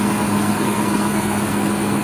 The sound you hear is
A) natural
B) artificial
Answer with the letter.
B